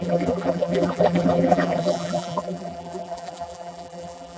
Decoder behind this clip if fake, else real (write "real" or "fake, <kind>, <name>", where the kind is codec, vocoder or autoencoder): fake, vocoder, BigVGAN v2